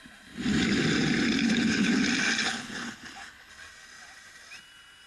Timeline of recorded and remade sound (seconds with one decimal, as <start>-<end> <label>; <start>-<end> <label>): 0.0-1.4 recorded; 1.4-2.0 remade; 2.0-2.4 recorded; 2.4-3.5 remade; 3.5-5.1 recorded